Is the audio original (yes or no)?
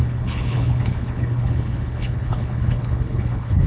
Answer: no